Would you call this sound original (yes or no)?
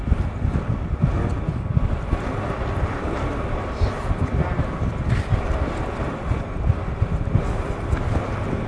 yes